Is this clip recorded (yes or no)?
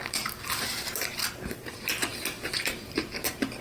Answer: no